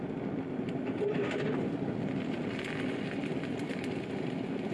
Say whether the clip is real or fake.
fake